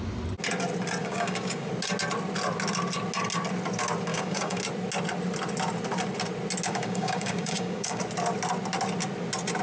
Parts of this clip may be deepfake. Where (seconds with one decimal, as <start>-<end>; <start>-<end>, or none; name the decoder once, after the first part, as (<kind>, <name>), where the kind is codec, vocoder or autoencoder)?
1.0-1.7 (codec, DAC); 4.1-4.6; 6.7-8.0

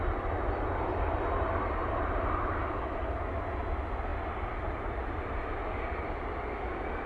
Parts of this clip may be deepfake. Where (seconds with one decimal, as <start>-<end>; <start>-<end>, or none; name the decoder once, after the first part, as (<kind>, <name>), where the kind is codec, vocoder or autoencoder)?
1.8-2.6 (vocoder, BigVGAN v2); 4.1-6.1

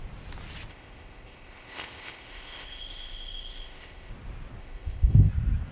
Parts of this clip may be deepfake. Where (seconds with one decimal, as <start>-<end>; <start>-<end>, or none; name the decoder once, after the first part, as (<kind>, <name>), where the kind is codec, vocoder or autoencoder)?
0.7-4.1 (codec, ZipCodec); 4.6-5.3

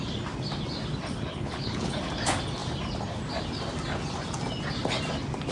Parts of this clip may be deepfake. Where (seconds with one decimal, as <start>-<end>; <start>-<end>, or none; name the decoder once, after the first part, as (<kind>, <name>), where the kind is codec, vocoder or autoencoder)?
1.3-1.9 (codec, HILCodec)

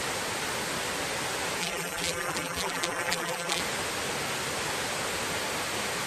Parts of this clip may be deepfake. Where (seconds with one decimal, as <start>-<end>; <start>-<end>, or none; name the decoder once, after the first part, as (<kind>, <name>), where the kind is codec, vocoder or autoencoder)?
1.6-3.6 (vocoder, BigVGAN v2)